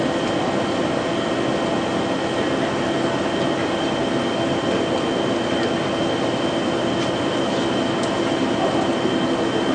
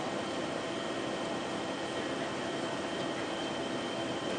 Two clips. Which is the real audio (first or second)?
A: first